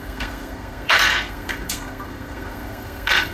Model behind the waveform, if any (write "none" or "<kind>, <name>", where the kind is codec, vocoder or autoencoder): codec, SNAC